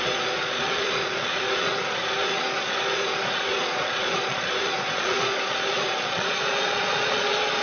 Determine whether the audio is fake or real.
fake